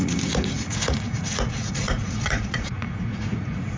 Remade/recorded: remade